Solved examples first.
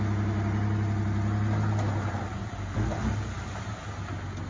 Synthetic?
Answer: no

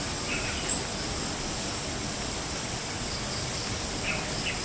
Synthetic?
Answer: no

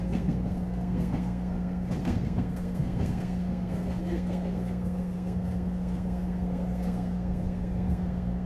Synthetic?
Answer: yes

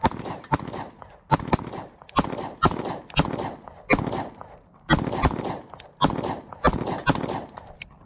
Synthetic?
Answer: no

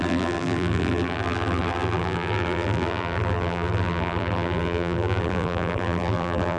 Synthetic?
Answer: yes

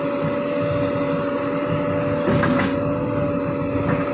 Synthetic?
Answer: no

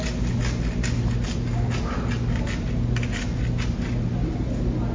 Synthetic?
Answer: no